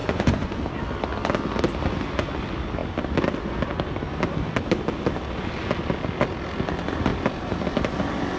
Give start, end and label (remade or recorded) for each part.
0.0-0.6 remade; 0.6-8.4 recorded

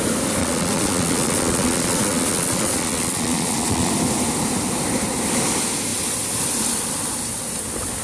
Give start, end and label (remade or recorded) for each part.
0.0-0.4 recorded; 0.4-3.9 remade; 3.9-8.0 recorded

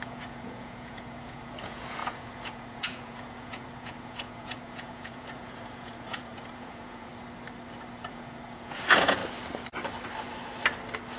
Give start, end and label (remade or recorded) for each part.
0.0-7.1 remade; 7.1-8.1 recorded; 8.1-9.2 remade; 9.2-11.2 recorded